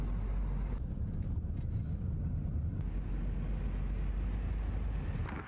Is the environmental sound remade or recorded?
recorded